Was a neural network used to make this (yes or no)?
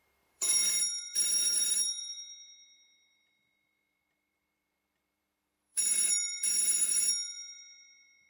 yes